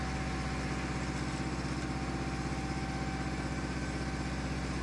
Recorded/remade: recorded